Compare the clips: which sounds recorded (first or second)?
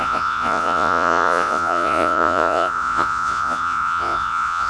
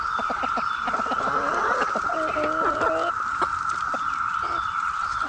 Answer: second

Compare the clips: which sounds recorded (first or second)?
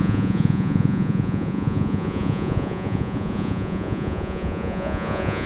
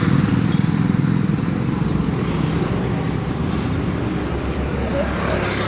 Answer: second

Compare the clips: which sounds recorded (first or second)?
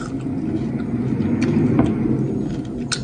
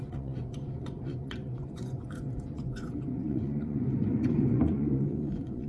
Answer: first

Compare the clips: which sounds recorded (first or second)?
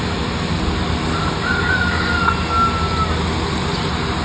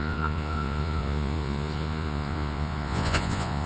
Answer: first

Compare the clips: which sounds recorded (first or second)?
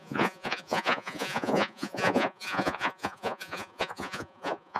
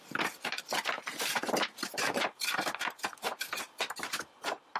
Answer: second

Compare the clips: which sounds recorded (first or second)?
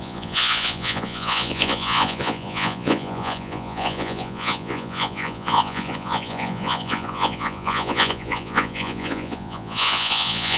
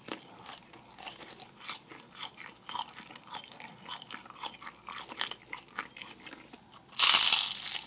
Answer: second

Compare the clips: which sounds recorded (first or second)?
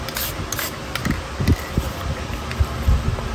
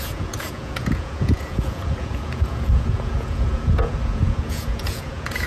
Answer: first